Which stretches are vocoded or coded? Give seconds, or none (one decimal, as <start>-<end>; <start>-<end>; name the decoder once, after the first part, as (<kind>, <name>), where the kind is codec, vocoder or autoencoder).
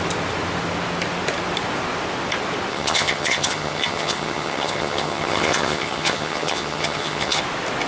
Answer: 2.7-7.4 (vocoder, HiFi-GAN)